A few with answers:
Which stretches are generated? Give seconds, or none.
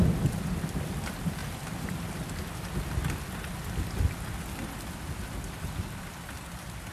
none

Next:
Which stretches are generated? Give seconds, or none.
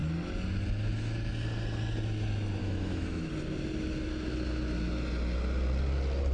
2.6-3.3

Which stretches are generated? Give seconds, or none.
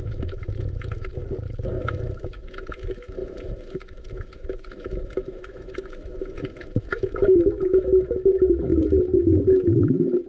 0.0-1.2; 1.8-10.3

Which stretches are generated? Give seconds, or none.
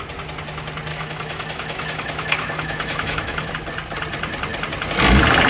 0.9-3.5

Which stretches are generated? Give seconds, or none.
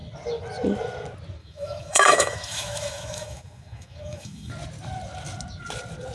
1.4-4.5